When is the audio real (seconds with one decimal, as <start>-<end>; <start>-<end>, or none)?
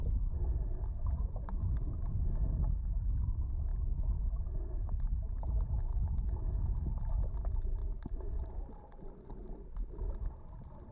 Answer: 0.0-3.7; 4.2-7.8; 8.3-10.9